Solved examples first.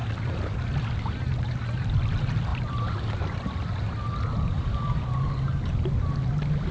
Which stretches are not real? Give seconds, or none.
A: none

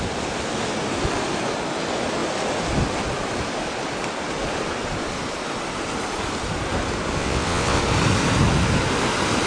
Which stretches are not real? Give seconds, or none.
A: 7.2-7.8 (vocoder, WaveNeXt)

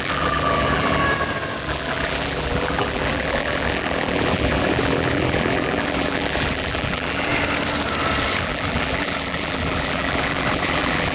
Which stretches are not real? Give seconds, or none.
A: 0.0-1.0 (vocoder, BigVGAN v2); 1.6-7.3; 8.4-11.1

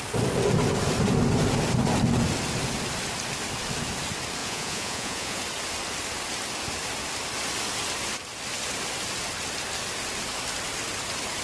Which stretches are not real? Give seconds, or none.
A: 4.4-5.4 (vocoder, Vocos)